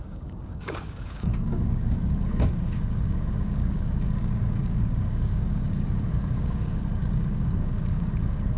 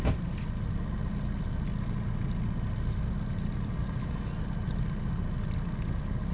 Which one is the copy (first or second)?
first